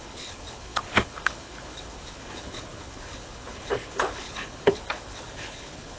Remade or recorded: remade